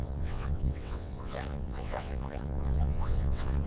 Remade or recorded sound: remade